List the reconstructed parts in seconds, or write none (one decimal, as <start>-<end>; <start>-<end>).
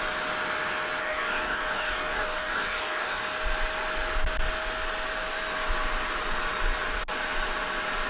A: 1.0-3.2